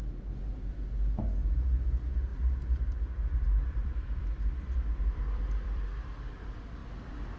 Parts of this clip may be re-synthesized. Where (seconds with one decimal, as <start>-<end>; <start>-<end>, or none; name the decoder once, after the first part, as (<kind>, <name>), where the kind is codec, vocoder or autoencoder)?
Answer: 2.3-6.3 (vocoder, BigVGAN v2)